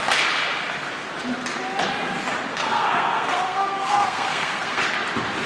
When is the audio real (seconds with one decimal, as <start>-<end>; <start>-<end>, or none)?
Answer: 0.0-2.5; 4.8-5.5